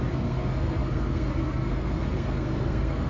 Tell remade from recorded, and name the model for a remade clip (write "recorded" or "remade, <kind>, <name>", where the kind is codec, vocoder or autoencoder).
remade, codec, SNAC